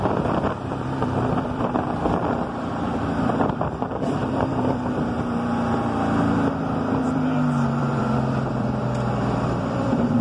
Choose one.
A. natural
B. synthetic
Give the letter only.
B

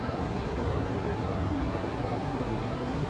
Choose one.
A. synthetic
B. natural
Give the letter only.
A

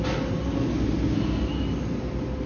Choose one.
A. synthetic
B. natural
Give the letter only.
B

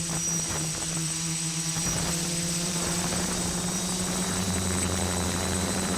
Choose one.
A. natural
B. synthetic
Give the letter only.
B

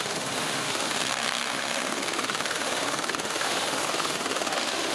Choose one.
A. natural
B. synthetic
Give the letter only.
B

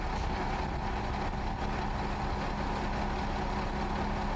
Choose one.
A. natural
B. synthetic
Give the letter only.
A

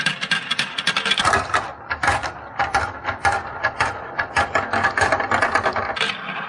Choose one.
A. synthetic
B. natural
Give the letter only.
A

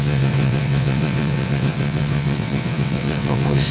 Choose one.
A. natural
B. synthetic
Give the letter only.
B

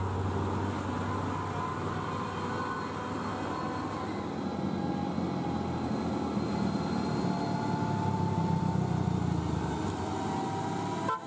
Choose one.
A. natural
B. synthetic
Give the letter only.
A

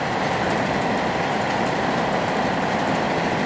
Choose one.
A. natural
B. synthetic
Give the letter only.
A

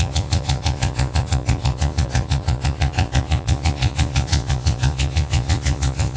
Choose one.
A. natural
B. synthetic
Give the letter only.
B